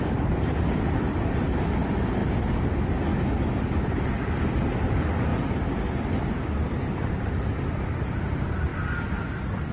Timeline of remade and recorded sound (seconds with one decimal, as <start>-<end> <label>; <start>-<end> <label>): 0.0-3.1 remade; 3.1-3.8 recorded; 3.8-5.3 remade; 5.3-7.3 recorded; 7.3-8.7 remade; 8.7-9.7 recorded